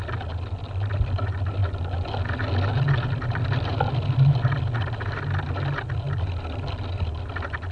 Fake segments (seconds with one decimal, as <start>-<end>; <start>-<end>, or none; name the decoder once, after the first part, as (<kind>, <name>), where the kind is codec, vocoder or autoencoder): none